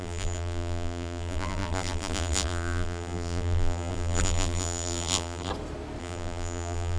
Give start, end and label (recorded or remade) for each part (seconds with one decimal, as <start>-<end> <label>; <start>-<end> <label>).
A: 0.0-5.5 remade; 5.5-6.0 recorded; 6.0-7.0 remade